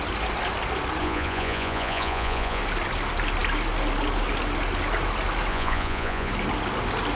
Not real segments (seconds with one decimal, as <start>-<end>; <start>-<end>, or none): 1.0-2.6; 5.5-6.3